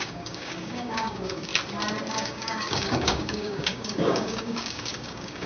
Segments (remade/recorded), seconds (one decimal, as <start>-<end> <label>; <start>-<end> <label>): 0.0-1.5 remade; 1.5-2.1 recorded; 2.1-5.5 remade